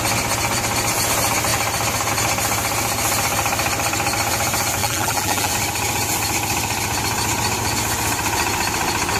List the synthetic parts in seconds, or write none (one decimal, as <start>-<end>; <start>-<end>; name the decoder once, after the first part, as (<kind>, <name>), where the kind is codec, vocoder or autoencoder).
4.8-5.5 (vocoder, BigVGAN v2)